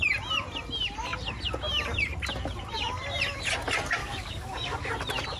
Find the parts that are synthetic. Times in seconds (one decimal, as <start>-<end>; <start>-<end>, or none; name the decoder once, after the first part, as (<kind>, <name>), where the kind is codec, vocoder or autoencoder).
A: 4.0-4.9 (codec, DAC)